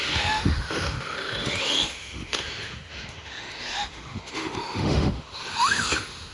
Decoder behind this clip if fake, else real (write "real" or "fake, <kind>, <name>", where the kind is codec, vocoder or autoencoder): fake, autoencoder, DAC-VAE